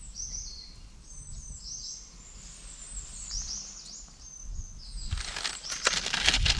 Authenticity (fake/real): real